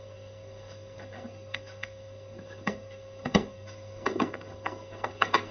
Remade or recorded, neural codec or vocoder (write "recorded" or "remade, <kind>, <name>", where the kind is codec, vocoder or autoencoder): remade, codec, SNAC